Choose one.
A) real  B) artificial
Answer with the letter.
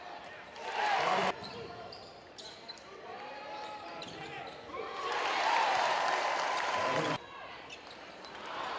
B